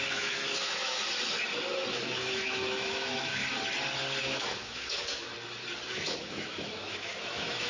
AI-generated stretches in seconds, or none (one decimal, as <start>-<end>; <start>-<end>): 0.0-1.0; 1.9-3.4; 4.2-5.3; 5.9-7.7